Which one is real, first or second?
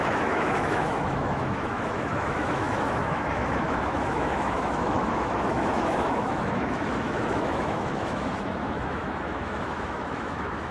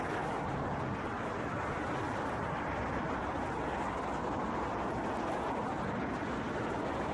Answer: second